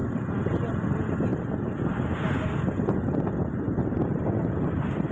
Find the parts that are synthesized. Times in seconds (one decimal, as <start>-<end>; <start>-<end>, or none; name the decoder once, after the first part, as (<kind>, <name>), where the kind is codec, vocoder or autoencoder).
none